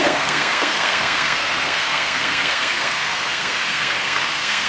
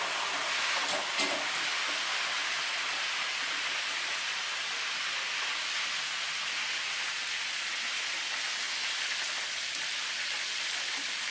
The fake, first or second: first